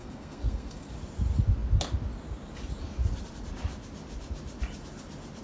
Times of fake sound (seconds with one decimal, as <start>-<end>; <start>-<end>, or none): 0.0-0.9